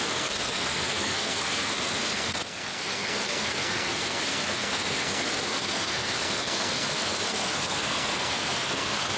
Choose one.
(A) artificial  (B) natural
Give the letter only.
A